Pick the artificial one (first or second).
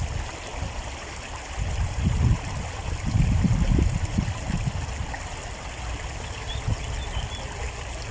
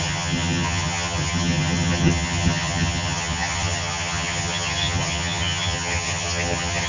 second